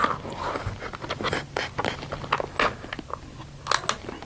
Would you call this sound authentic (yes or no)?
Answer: yes